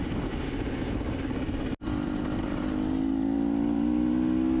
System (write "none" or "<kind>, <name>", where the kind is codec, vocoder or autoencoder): none